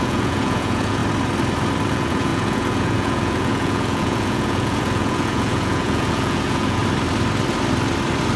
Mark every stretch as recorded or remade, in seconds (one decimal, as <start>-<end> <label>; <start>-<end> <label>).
0.0-1.0 remade; 1.0-1.9 recorded; 1.9-6.8 remade; 6.8-8.4 recorded